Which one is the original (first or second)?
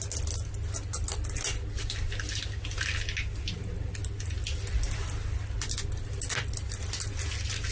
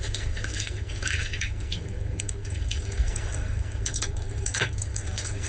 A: first